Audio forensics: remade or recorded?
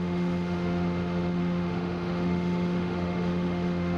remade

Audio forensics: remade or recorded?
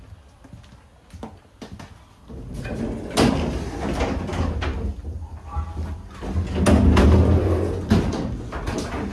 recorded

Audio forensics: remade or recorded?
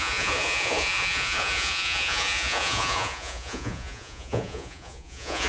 remade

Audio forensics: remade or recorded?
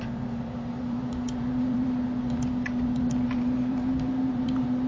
remade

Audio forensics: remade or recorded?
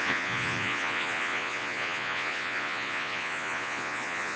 remade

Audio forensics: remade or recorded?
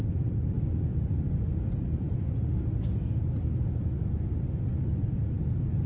recorded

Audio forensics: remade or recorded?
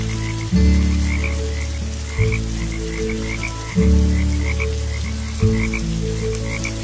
recorded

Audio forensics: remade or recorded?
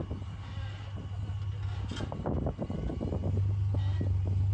recorded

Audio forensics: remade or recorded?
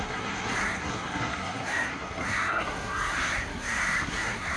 remade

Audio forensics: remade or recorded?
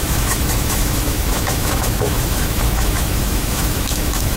remade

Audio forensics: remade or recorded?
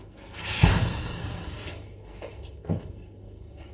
remade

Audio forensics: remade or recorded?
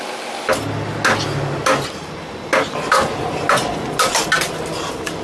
recorded